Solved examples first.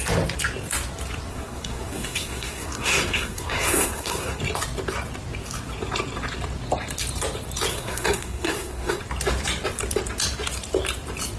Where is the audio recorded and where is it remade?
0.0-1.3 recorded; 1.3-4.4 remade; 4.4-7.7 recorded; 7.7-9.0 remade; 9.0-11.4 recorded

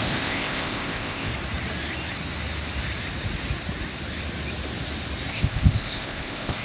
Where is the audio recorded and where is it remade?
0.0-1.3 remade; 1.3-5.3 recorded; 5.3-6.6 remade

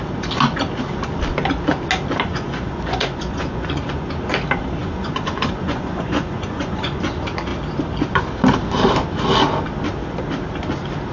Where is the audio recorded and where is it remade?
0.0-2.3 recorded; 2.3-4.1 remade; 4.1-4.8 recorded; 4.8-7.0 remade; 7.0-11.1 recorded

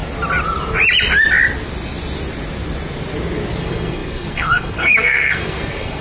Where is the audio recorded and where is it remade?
0.0-3.6 recorded; 3.6-6.0 remade